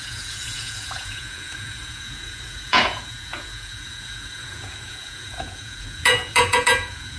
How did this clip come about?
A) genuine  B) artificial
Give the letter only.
B